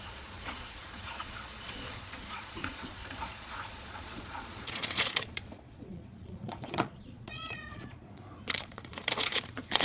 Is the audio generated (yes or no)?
yes